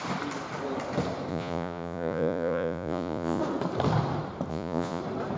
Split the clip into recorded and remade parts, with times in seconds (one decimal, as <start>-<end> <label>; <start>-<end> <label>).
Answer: 0.0-1.3 recorded; 1.3-3.4 remade; 3.4-4.5 recorded; 4.5-5.0 remade; 5.0-5.4 recorded